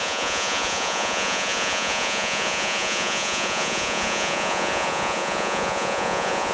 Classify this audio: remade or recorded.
remade